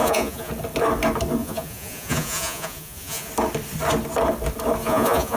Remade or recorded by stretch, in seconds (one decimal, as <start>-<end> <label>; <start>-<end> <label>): 0.0-0.5 remade; 0.5-1.4 recorded; 1.4-3.3 remade; 3.3-4.8 recorded; 4.8-5.4 remade